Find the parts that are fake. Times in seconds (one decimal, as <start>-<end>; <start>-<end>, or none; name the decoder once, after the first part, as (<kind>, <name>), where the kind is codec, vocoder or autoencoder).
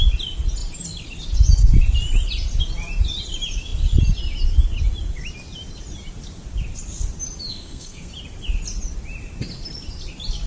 7.5-8.1 (codec, SNAC)